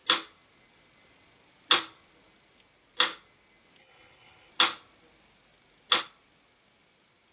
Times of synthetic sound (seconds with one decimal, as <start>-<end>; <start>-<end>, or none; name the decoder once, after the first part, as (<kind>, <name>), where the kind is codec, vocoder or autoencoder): 3.8-4.5 (codec, HILCodec)